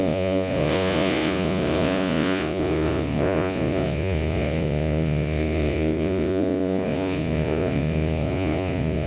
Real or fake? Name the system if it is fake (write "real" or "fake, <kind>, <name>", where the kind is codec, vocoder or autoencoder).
fake, vocoder, Vocos